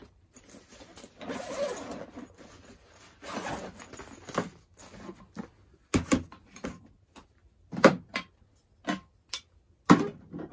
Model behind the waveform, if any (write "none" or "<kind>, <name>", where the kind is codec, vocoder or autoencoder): none